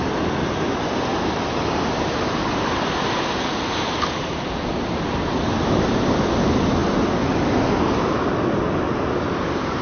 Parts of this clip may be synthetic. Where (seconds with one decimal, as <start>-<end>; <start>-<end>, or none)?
1.1-1.9